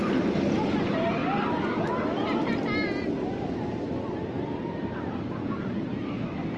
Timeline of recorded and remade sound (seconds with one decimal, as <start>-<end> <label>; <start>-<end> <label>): 0.0-1.2 recorded; 1.2-5.1 remade; 5.1-6.6 recorded

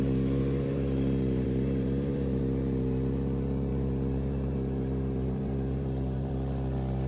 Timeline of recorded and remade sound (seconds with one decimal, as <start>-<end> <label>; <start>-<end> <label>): 0.0-0.4 recorded; 0.4-2.4 remade; 2.4-3.7 recorded; 3.7-6.3 remade; 6.3-7.1 recorded